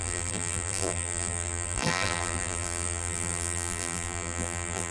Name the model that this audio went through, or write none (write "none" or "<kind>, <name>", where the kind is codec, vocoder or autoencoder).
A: vocoder, BigVGAN v2